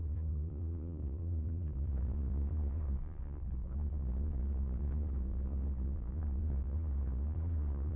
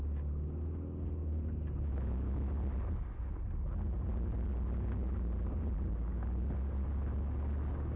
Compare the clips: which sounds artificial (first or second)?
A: first